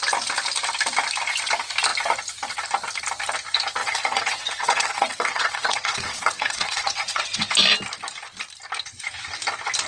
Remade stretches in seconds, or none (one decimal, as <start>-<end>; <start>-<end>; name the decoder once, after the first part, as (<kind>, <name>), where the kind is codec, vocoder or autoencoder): 3.8-7.5 (vocoder, WaveNeXt)